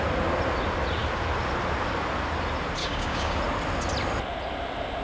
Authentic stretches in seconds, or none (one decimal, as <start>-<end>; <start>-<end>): 0.0-2.8; 3.4-5.0